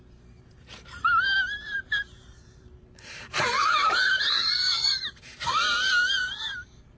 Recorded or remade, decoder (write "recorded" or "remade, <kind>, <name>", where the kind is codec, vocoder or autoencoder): remade, vocoder, BigVGAN v2